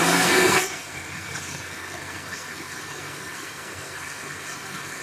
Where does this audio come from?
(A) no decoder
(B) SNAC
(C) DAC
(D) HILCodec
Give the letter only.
B